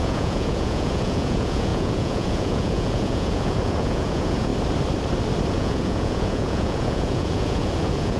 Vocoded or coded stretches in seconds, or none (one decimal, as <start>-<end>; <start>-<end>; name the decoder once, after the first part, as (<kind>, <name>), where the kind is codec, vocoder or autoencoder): 0.0-4.5 (vocoder, Vocos); 5.5-8.2